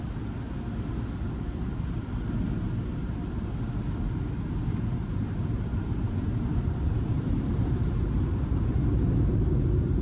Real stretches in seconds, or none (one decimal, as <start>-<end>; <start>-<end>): 0.0-5.7; 8.8-10.0